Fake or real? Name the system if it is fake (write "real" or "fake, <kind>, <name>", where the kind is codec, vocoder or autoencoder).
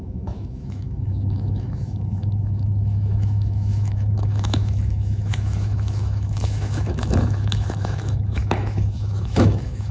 fake, autoencoder, DAC-VAE